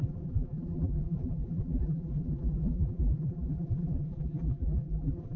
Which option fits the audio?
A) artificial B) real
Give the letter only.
A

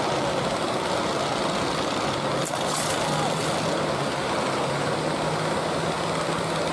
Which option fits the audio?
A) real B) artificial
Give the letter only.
A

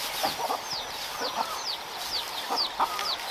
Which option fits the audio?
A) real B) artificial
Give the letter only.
B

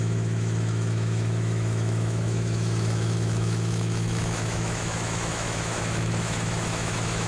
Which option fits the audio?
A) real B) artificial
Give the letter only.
B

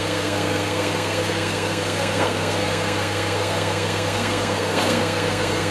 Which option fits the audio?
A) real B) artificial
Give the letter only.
B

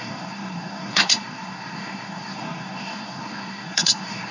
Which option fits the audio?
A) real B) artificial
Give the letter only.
B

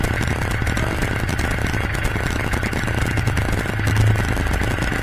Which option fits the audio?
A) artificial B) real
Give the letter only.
B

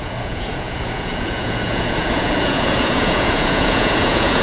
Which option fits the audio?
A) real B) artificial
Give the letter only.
B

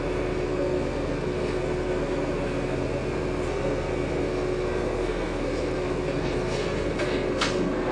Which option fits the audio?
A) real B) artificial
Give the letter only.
B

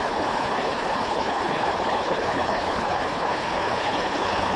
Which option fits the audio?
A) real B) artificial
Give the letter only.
B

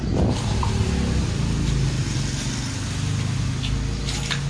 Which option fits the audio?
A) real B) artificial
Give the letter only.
A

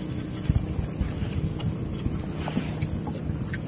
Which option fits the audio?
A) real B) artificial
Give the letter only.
A